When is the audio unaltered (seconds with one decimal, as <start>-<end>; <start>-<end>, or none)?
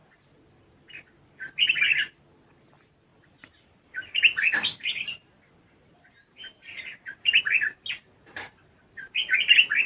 0.0-3.1; 7.4-9.9